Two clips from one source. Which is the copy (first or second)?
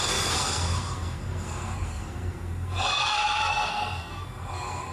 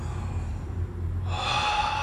first